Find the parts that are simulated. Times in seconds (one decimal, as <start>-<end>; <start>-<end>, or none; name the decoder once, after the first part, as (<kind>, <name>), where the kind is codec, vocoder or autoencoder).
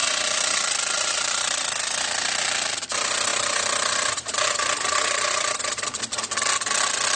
3.3-6.0 (vocoder, BigVGAN v2)